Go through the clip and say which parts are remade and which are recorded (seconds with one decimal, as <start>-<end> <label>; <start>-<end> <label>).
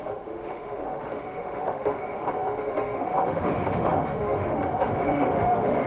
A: 0.0-5.9 remade